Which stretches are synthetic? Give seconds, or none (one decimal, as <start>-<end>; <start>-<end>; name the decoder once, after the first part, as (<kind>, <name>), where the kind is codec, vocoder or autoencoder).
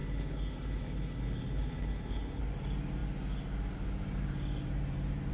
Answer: 0.0-2.4 (codec, HILCodec)